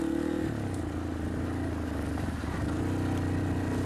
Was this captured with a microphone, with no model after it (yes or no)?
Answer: yes